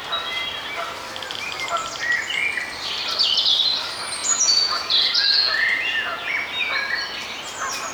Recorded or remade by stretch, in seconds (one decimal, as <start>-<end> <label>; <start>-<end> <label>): 0.0-4.2 recorded; 4.2-6.3 remade; 6.3-7.9 recorded